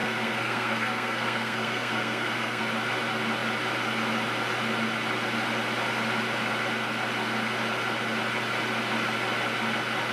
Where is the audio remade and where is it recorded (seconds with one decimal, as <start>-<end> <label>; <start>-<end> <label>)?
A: 0.0-2.6 remade; 2.6-10.1 recorded